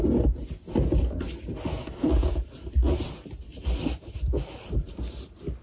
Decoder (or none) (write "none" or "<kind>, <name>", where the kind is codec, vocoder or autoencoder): none